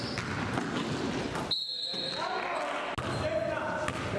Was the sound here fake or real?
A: real